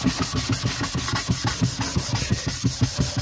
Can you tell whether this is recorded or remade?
recorded